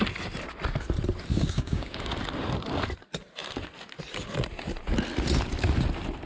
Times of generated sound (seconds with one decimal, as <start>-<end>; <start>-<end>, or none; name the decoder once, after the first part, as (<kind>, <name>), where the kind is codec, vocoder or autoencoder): 1.3-2.1 (codec, DAC)